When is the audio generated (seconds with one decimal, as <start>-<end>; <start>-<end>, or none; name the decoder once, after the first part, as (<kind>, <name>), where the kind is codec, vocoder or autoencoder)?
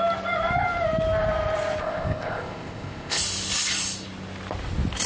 1.8-3.2 (codec, ZipCodec)